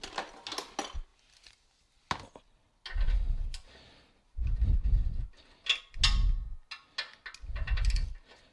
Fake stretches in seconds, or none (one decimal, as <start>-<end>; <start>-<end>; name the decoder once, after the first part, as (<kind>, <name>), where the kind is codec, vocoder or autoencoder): none